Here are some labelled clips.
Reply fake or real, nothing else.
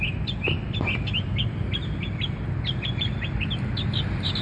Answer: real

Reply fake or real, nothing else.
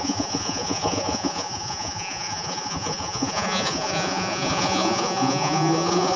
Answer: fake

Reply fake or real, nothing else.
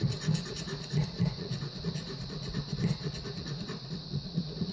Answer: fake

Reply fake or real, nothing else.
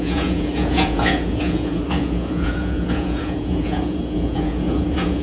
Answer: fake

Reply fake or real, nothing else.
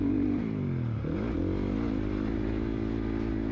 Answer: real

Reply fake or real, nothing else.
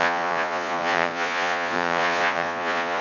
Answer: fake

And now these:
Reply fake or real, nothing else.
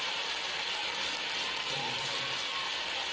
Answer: real